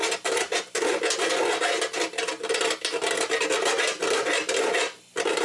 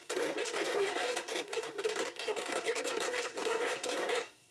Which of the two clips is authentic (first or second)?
first